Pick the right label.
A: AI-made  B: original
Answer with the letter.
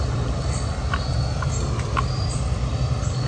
B